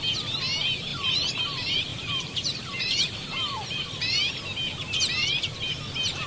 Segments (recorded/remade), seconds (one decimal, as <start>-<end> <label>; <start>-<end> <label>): 0.0-0.9 recorded; 0.9-1.4 remade; 1.4-1.9 recorded; 1.9-4.4 remade; 4.4-6.3 recorded

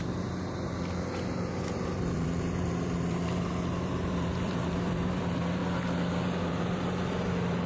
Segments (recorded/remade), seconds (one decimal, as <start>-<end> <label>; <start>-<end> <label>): 0.0-5.6 remade; 5.6-6.4 recorded; 6.4-7.7 remade

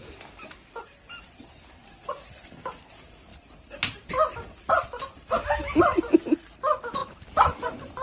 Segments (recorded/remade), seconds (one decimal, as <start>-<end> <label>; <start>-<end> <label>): 0.0-3.3 recorded; 3.3-4.1 remade; 4.1-7.0 recorded; 7.0-8.0 remade

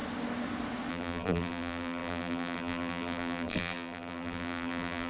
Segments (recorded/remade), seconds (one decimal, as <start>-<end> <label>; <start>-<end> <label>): 0.0-0.9 recorded; 0.9-5.1 remade

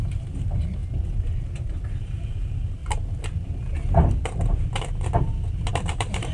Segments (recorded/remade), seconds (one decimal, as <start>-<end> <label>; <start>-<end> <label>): 0.0-2.8 remade; 2.8-5.7 recorded; 5.7-6.3 remade

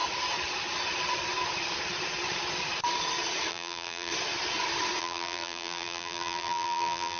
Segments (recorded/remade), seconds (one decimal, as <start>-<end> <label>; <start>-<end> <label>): 0.0-3.5 recorded; 3.5-4.1 remade; 4.1-5.0 recorded; 5.0-7.2 remade